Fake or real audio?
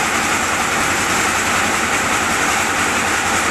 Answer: real